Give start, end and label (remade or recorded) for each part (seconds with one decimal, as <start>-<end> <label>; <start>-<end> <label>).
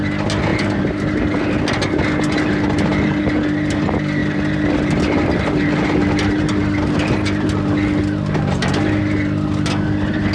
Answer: 0.0-10.3 recorded